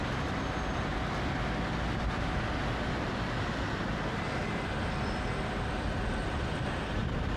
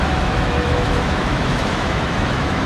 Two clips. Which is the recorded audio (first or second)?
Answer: first